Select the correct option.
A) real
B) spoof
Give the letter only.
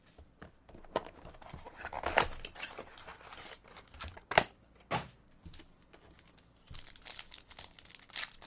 A